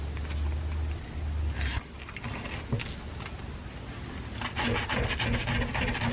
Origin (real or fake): real